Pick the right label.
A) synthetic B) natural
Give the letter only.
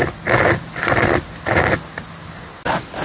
B